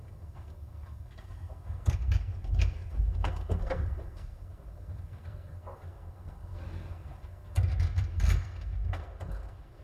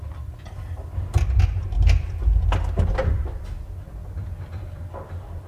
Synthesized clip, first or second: first